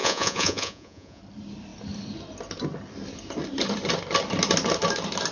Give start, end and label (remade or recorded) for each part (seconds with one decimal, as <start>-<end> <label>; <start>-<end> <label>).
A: 0.0-1.2 remade; 1.2-5.3 recorded